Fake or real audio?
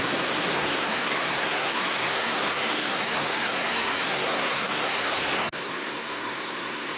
fake